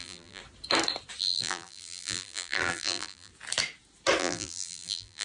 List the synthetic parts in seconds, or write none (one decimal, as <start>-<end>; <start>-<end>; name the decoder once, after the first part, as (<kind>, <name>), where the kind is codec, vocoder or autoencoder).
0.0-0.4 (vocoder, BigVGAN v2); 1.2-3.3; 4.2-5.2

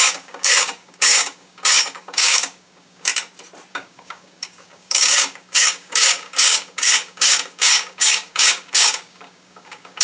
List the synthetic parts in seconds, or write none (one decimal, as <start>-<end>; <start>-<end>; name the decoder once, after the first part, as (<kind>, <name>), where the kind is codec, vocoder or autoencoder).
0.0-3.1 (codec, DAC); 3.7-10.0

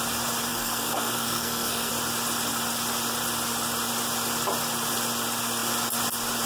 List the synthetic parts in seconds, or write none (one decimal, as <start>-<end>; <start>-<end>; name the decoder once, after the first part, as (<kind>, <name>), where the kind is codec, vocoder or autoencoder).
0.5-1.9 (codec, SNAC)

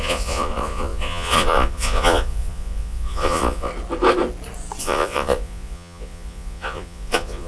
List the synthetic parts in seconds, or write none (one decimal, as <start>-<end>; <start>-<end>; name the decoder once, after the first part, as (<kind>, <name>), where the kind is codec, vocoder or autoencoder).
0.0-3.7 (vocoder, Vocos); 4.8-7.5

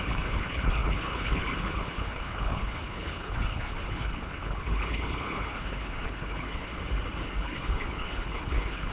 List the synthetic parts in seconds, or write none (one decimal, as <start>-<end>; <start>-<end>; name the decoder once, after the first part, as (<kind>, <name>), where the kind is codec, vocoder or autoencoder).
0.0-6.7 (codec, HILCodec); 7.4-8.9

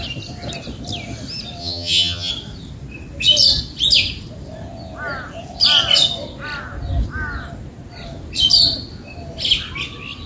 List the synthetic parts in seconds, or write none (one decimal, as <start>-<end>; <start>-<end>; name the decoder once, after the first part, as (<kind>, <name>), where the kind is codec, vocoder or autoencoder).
1.6-2.3 (vocoder, HiFi-GAN)

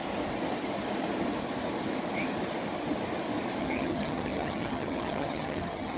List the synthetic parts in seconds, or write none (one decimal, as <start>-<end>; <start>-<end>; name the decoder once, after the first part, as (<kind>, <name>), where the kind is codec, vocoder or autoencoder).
3.6-6.0 (vocoder, HiFi-GAN)

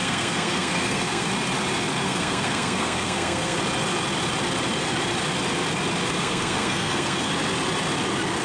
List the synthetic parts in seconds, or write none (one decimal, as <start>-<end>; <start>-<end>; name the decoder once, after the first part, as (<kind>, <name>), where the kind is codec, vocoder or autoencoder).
0.0-1.3 (codec, SNAC); 2.0-3.6; 6.2-7.3